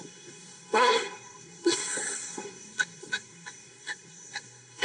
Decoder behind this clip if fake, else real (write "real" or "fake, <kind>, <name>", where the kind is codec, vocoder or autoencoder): fake, codec, SNAC